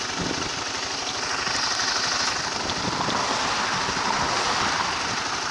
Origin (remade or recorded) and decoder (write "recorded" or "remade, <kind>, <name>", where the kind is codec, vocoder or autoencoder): recorded